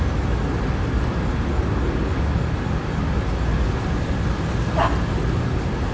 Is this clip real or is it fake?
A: real